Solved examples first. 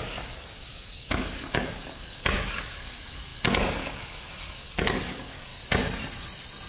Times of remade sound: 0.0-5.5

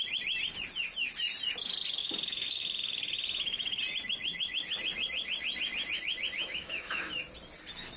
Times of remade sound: 2.0-3.8; 6.4-7.1

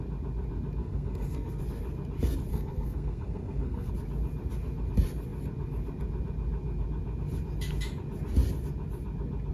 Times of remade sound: 0.8-1.6; 2.5-3.9

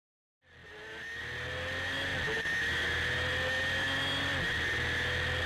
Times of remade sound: none

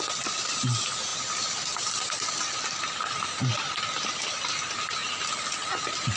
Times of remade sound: none